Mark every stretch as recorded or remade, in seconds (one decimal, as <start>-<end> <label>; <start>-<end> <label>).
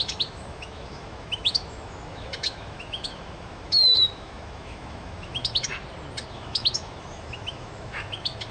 0.0-5.7 remade; 5.7-6.3 recorded; 6.3-8.5 remade